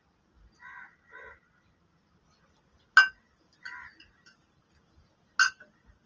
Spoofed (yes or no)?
no